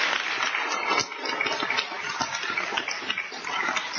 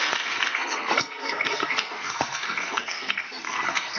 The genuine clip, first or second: first